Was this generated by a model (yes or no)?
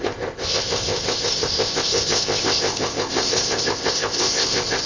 yes